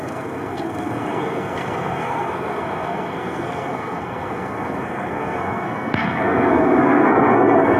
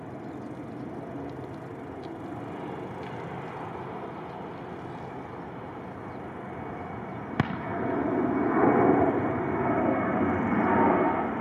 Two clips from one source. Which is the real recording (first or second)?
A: second